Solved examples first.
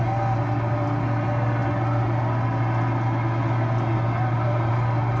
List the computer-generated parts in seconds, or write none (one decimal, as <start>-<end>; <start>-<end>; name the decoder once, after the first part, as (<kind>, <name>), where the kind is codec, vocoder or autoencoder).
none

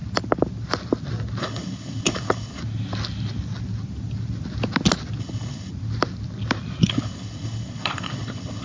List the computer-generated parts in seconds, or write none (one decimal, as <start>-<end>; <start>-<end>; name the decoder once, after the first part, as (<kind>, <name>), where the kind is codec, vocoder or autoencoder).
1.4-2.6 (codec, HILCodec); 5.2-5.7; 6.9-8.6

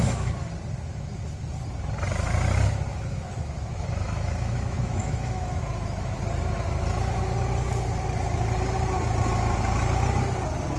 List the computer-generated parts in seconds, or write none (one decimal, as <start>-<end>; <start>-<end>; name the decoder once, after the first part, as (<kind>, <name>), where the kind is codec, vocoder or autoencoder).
2.9-6.2 (autoencoder, DAC-VAE)

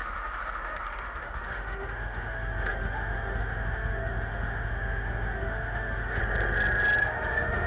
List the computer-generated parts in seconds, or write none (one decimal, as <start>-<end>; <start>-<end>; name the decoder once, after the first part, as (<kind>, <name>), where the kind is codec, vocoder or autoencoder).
0.0-6.2 (autoencoder, DAC-VAE); 7.0-7.7

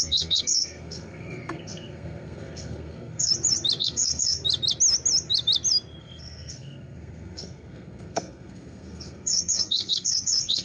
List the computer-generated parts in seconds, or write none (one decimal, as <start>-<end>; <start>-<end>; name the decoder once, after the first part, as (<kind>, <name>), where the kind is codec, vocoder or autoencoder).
0.0-3.3 (codec, SNAC); 3.8-4.4; 6.0-10.6